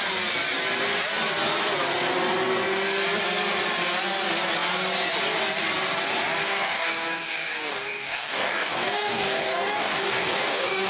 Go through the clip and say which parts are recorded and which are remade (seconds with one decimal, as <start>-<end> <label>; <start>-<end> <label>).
0.0-6.4 recorded; 6.4-10.9 remade